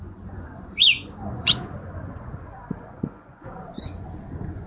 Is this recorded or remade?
remade